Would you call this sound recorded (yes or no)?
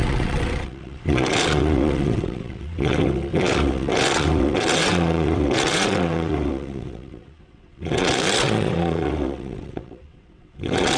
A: no